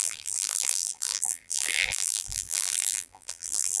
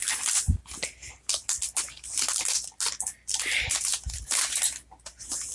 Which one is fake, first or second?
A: first